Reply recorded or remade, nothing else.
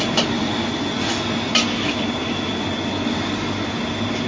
recorded